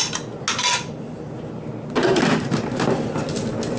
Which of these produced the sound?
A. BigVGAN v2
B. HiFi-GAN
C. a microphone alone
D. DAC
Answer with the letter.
C